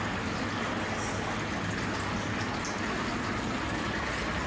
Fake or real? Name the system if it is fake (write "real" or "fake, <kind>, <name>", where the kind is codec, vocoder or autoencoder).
real